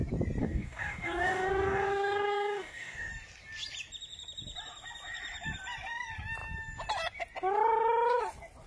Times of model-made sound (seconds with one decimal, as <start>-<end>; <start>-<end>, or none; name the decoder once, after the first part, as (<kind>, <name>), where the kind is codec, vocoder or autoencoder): 0.4-3.1 (codec, DAC)